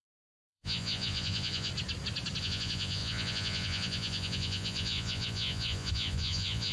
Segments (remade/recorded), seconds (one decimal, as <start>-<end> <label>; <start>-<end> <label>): 0.0-1.7 remade; 1.7-2.4 recorded; 2.4-6.7 remade